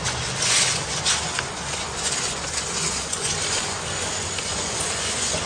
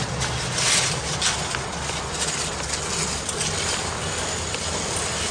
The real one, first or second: second